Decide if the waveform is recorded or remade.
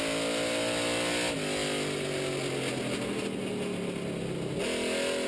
recorded